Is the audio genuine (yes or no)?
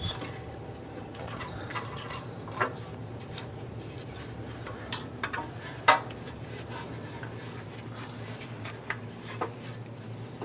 no